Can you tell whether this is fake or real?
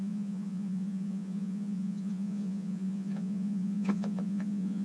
fake